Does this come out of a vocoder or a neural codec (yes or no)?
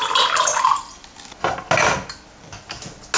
no